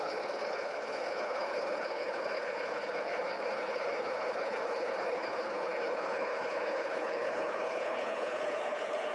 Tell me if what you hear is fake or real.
fake